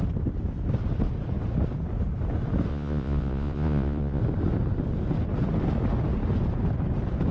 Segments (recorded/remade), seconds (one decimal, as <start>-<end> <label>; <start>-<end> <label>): 0.0-2.7 recorded; 2.7-4.2 remade; 4.2-7.3 recorded